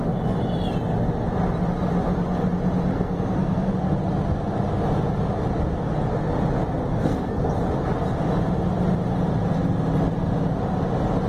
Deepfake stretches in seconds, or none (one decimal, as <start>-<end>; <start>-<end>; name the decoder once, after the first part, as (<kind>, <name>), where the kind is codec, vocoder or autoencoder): 2.9-3.7 (codec, SNAC); 6.9-7.5